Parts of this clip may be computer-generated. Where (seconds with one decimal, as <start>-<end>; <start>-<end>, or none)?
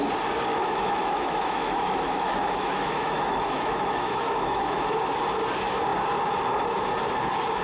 0.5-4.8